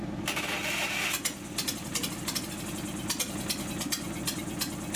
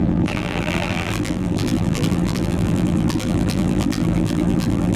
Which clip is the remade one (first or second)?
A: second